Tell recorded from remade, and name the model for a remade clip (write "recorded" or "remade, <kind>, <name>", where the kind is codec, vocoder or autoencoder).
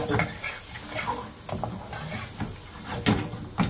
recorded